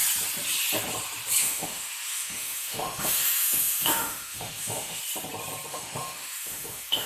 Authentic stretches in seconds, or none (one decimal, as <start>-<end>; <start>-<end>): 0.0-1.4; 5.0-5.7